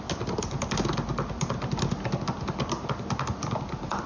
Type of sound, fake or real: real